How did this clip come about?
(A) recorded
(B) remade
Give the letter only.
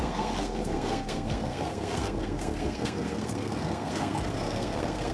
B